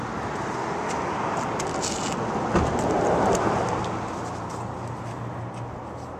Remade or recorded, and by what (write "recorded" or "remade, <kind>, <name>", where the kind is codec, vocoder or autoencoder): recorded